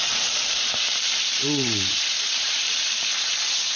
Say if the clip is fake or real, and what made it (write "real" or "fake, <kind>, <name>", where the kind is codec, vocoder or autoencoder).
fake, vocoder, BigVGAN v2